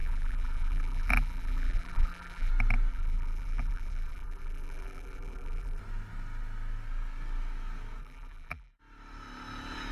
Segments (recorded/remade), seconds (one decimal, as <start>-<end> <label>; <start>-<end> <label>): 0.0-2.5 remade; 2.5-2.9 recorded; 2.9-5.8 remade; 5.8-8.0 recorded; 8.0-8.8 remade; 8.8-9.9 recorded